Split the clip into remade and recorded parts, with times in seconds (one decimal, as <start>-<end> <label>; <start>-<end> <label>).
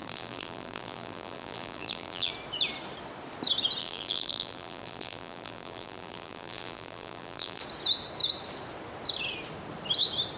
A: 0.0-2.3 remade; 2.3-3.8 recorded; 3.8-7.6 remade; 7.6-10.4 recorded